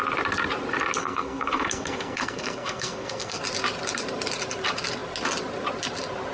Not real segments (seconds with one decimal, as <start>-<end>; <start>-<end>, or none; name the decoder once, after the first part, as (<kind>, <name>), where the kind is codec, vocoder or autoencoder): 1.0-3.4 (codec, SNAC)